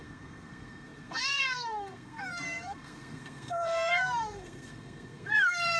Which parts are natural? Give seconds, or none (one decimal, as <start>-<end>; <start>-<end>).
none